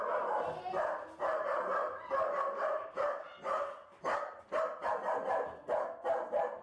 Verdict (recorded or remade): recorded